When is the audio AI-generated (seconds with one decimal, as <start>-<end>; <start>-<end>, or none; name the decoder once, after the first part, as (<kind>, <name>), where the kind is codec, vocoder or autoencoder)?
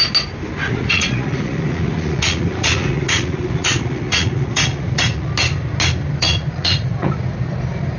0.6-5.3 (vocoder, Vocos); 6.2-7.2